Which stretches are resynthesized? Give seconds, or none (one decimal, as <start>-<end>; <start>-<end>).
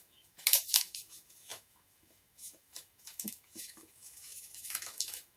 0.0-5.4